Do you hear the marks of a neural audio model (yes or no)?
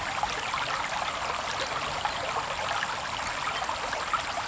no